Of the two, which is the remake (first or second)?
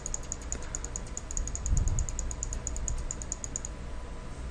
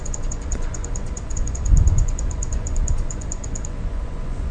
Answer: second